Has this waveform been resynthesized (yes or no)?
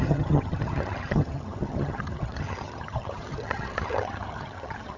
yes